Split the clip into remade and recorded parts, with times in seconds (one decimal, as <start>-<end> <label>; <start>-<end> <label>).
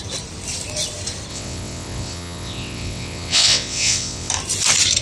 0.0-1.3 recorded; 1.3-4.3 remade; 4.3-5.0 recorded